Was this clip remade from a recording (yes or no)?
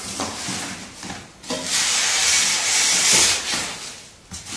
no